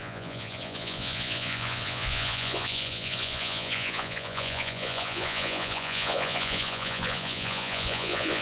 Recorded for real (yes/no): no